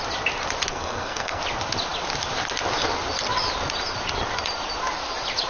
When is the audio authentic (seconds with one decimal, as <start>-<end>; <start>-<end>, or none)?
0.0-0.7; 1.4-5.5